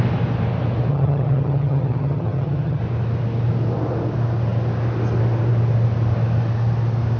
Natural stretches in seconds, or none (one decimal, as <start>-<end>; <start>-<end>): 0.0-0.9; 2.8-7.2